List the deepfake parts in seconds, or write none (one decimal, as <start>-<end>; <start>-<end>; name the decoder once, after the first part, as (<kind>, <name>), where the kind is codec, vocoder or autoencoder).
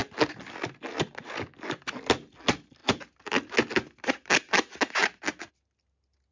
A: none